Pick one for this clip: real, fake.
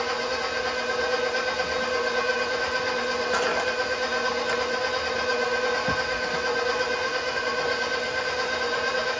real